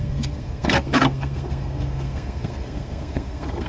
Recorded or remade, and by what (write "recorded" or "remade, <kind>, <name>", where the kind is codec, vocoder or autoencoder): remade, codec, SNAC